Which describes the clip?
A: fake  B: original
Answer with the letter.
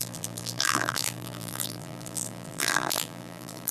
A